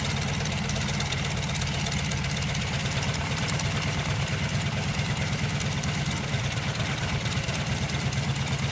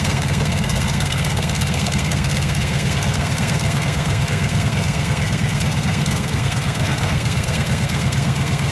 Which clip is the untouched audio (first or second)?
first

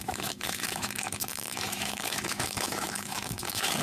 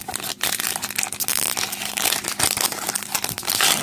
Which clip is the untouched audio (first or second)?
second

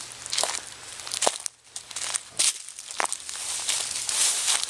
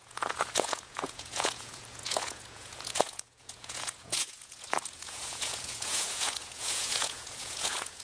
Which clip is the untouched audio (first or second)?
first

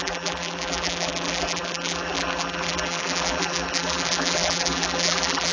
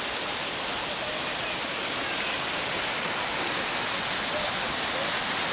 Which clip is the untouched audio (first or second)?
second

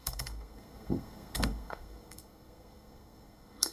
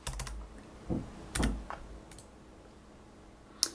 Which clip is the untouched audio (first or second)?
second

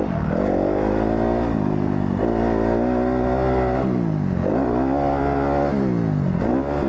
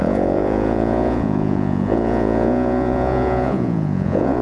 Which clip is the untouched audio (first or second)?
first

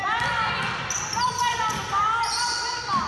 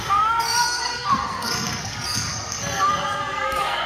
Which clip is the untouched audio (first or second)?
first